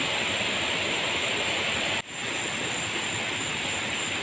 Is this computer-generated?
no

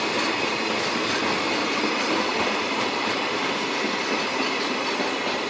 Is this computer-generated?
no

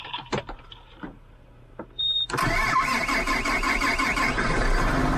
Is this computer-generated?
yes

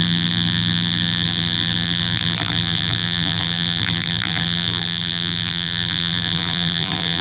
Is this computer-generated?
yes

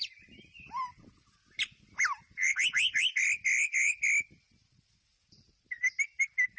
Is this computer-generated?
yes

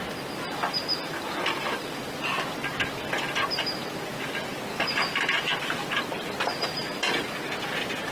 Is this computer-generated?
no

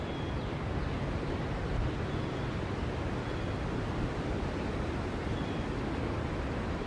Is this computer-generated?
no